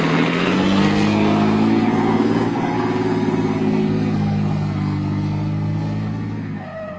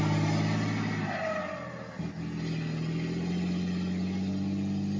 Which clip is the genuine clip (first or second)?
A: second